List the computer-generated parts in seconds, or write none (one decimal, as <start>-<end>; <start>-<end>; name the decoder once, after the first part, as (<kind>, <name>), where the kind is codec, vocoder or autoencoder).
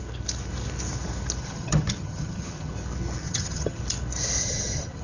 1.4-2.7 (vocoder, HiFi-GAN); 3.2-3.8; 4.4-5.0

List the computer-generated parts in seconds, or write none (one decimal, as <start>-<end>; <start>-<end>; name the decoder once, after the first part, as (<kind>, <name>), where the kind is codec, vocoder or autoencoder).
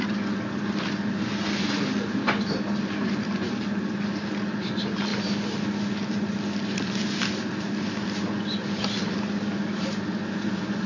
none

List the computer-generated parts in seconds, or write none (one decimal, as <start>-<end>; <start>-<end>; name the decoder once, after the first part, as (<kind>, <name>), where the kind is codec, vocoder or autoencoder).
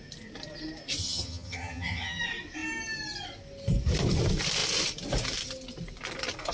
1.0-2.2 (vocoder, HiFi-GAN)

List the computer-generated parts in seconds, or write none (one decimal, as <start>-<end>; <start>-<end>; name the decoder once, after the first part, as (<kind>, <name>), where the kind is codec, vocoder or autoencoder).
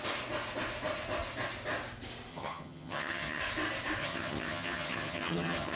2.3-3.4 (vocoder, HiFi-GAN); 4.0-5.8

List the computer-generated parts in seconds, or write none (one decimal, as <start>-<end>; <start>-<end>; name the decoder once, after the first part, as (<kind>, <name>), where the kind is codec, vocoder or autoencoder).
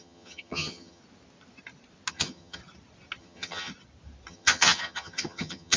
0.0-1.0 (vocoder, HiFi-GAN); 2.1-2.6; 3.2-3.7; 4.3-5.8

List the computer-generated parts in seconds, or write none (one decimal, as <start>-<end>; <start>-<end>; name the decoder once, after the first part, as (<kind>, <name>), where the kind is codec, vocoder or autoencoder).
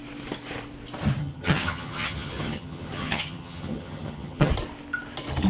1.2-4.5 (vocoder, HiFi-GAN)